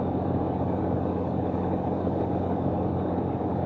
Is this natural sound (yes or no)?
no